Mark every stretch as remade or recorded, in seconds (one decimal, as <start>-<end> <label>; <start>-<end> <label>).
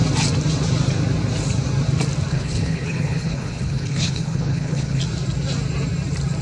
0.0-2.3 recorded; 2.3-5.0 remade; 5.0-6.4 recorded